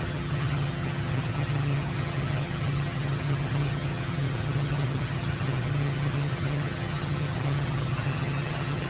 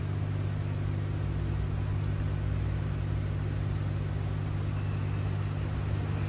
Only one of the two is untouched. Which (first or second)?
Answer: second